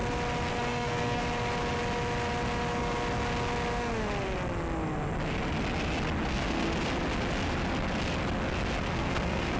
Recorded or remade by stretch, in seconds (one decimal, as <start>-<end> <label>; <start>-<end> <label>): 0.0-0.5 recorded; 0.5-1.2 remade; 1.2-6.3 recorded; 6.3-6.7 remade; 6.7-8.8 recorded; 8.8-9.6 remade